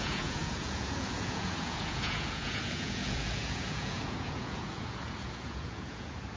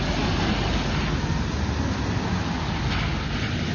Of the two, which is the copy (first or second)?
first